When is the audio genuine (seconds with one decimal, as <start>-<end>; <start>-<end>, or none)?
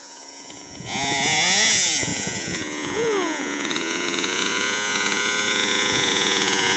none